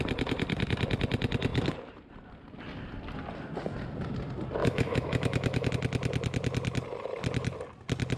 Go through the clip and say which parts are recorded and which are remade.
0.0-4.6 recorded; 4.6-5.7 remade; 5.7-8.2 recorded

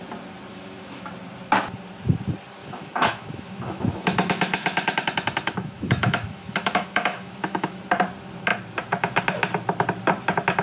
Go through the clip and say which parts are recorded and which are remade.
0.0-0.5 recorded; 0.5-1.1 remade; 1.1-2.6 recorded; 2.6-7.8 remade; 7.8-10.6 recorded

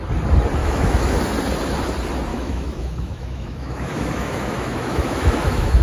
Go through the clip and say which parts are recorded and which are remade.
0.0-0.6 recorded; 0.6-1.2 remade; 1.2-2.3 recorded; 2.3-5.8 remade

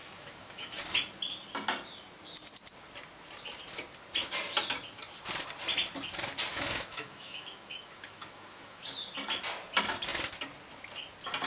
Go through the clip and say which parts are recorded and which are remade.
0.0-0.8 remade; 0.8-6.5 recorded; 6.5-8.8 remade; 8.8-11.5 recorded

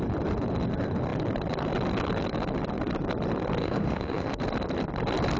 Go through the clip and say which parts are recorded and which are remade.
0.0-3.6 recorded; 3.6-4.4 remade; 4.4-5.4 recorded

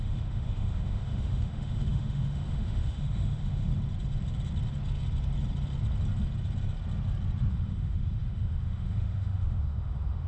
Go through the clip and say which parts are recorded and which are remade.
0.0-3.7 remade; 3.7-7.5 recorded; 7.5-10.3 remade

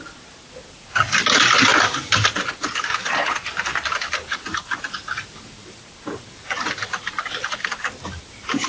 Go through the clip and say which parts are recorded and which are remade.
0.0-8.7 recorded

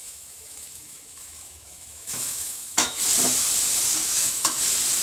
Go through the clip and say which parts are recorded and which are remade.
0.0-3.0 remade; 3.0-4.0 recorded; 4.0-4.6 remade; 4.6-5.0 recorded